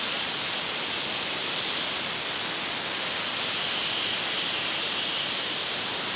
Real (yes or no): yes